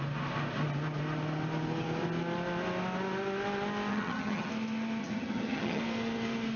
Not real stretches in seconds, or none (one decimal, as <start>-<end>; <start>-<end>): 3.9-4.5; 5.0-5.8

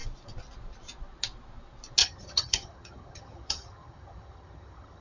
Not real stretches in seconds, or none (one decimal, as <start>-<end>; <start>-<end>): 2.0-5.0

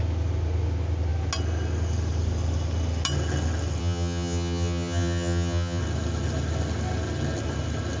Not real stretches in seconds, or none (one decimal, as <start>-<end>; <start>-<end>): 3.8-5.8

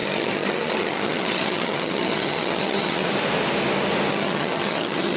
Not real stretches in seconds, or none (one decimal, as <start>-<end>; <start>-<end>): 0.0-3.1; 4.1-5.2

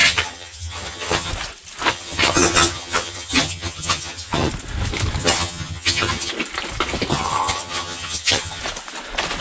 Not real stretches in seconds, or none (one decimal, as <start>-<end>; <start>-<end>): 0.0-1.3; 1.9-4.5; 5.2-6.3; 7.1-8.6

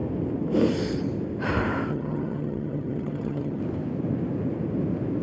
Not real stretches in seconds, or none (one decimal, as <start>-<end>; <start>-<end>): 1.9-3.6

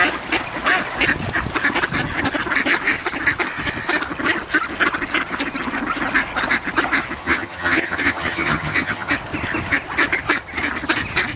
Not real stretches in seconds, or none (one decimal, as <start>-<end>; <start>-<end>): 7.2-9.1

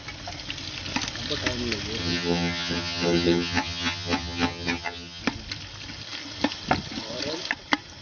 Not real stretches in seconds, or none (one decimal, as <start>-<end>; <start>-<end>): 2.0-5.2